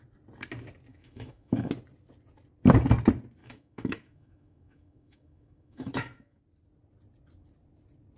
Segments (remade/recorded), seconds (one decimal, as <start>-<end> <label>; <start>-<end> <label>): 0.0-0.9 recorded; 0.9-1.7 remade; 1.7-3.4 recorded; 3.4-6.4 remade; 6.4-8.2 recorded